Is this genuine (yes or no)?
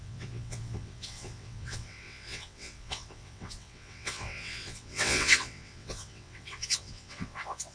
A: no